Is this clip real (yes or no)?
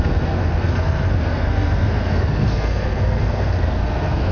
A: no